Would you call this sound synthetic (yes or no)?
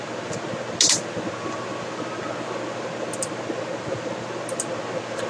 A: no